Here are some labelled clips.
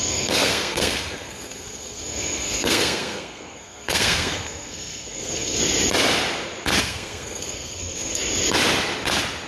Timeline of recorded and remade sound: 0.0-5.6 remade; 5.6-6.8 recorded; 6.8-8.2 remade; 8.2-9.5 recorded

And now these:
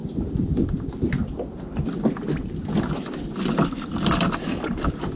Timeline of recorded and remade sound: 0.0-5.2 recorded

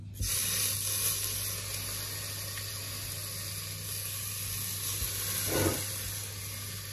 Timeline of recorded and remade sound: 0.0-6.9 recorded

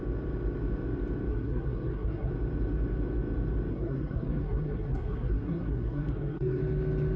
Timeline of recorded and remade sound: 0.0-1.3 recorded; 1.3-2.3 remade; 2.3-3.7 recorded; 3.7-6.6 remade; 6.6-7.2 recorded

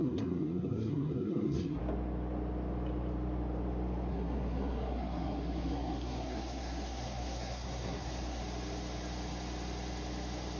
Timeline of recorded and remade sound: 0.0-1.8 remade; 1.8-4.1 recorded; 4.1-8.4 remade; 8.4-10.6 recorded

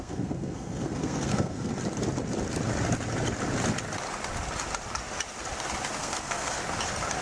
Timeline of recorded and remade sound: 0.0-1.7 remade; 1.7-6.0 recorded; 6.0-6.6 remade; 6.6-7.2 recorded